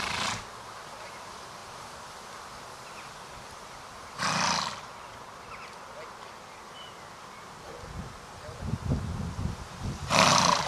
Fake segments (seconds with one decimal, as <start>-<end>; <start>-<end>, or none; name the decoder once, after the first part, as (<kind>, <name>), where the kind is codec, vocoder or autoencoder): 1.6-2.1 (vocoder, BigVGAN v2)